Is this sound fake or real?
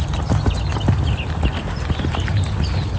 real